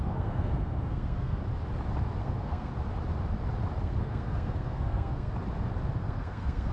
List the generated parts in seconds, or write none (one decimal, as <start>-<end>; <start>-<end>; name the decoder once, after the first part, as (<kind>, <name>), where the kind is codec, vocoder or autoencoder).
0.0-1.4 (codec, SNAC); 2.2-2.7; 3.8-5.3; 6.0-6.7